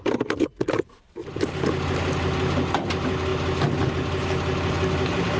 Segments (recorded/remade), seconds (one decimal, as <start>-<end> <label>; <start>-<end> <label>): 0.0-5.4 recorded